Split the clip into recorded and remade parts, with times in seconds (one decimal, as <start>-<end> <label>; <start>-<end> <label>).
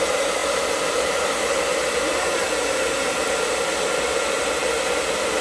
0.0-0.4 recorded; 0.4-1.3 remade; 1.3-1.8 recorded; 1.8-2.5 remade; 2.5-5.4 recorded